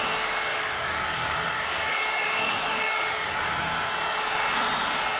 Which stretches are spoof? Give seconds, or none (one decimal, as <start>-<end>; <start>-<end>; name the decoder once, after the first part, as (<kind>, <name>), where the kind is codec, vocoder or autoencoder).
0.5-3.6 (codec, DAC)